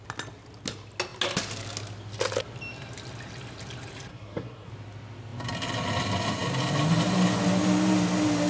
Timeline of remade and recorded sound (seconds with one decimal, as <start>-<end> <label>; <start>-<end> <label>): 0.0-4.1 recorded; 4.1-4.7 remade; 4.7-8.5 recorded

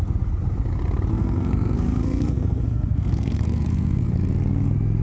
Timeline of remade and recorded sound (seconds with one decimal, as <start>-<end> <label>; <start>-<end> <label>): 0.0-1.1 recorded; 1.1-4.1 remade; 4.1-5.0 recorded

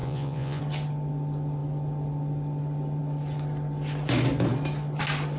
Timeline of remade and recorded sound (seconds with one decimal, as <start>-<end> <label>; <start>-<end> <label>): 0.0-0.6 remade; 0.6-5.4 recorded

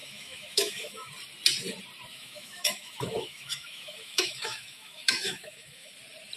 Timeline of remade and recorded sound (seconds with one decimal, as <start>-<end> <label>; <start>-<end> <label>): 0.0-1.1 remade; 1.1-2.1 recorded; 2.1-5.9 remade; 5.9-6.4 recorded